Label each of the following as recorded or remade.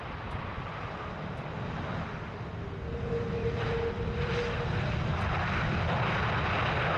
recorded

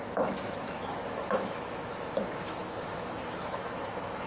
remade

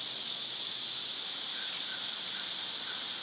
recorded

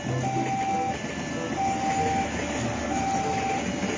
recorded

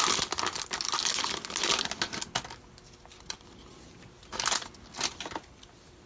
recorded